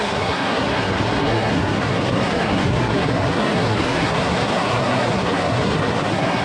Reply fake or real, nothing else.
fake